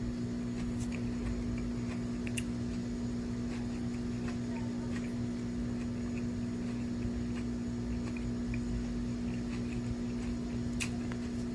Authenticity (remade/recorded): recorded